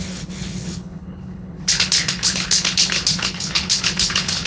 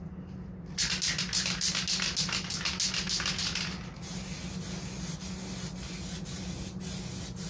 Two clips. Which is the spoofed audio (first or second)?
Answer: first